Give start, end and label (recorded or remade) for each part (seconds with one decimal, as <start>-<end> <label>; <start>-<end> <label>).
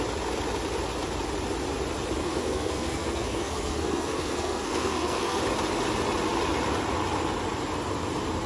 0.0-2.2 recorded; 2.2-5.4 remade; 5.4-8.5 recorded